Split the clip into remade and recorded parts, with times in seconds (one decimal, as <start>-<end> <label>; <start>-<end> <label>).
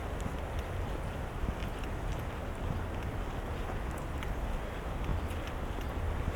0.0-6.4 recorded